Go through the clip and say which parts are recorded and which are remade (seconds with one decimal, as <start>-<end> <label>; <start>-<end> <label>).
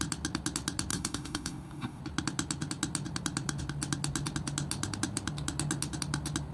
0.0-0.9 recorded; 0.9-2.0 remade; 2.0-6.5 recorded